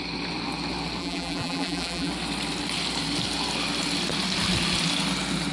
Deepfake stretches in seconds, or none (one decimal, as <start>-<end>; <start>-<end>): 1.0-2.1